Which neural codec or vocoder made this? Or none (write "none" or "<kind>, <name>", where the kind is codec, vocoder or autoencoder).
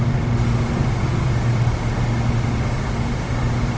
none